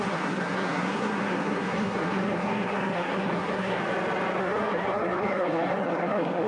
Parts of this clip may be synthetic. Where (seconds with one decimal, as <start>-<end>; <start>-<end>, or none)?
0.0-3.8; 4.4-6.5